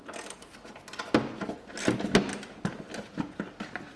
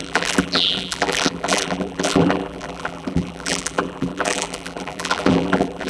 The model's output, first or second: second